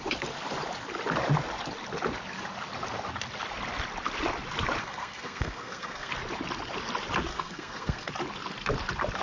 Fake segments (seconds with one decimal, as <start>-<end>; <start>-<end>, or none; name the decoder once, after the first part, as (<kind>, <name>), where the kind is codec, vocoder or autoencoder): 4.8-6.1 (codec, SNAC); 7.3-8.1